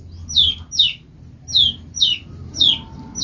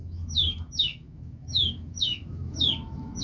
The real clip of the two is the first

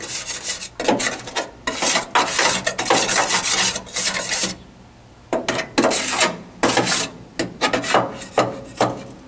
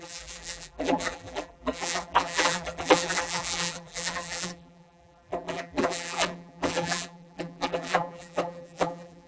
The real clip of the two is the first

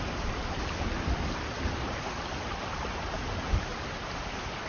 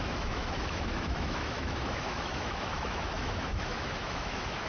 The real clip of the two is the first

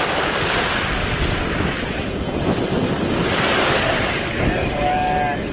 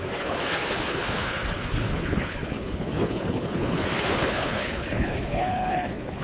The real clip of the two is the first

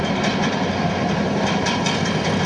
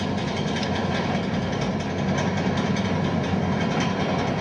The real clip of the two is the second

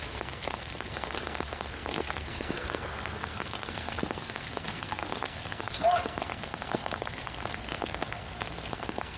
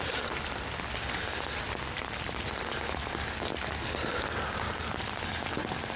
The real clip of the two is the second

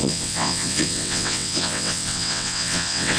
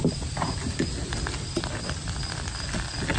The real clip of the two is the second